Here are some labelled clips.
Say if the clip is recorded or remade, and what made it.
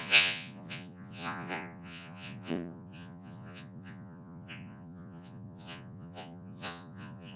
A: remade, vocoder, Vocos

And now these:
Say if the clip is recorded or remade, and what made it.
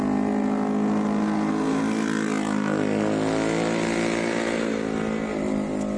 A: recorded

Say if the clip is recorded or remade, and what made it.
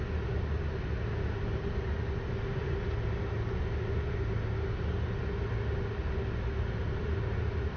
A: recorded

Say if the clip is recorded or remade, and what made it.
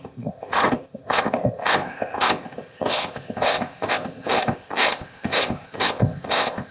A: remade, codec, ZipCodec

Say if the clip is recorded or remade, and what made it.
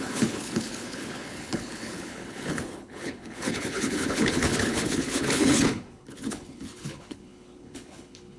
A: remade, codec, HILCodec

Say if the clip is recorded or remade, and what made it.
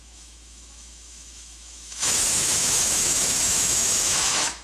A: remade, autoencoder, DAC-VAE